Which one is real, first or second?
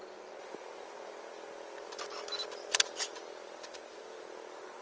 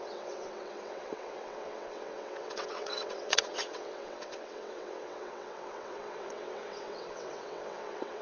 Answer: first